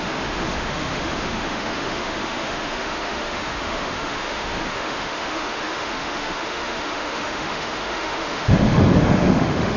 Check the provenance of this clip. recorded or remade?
remade